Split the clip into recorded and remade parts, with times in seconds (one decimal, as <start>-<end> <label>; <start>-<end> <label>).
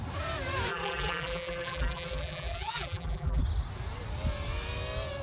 0.0-0.7 recorded; 0.7-3.4 remade; 3.4-5.2 recorded